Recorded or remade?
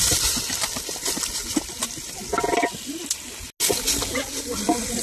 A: recorded